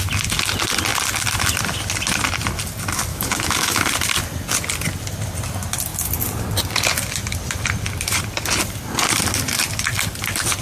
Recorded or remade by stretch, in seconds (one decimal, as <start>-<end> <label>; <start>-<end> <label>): 0.0-3.1 recorded; 3.1-3.8 remade; 3.8-10.6 recorded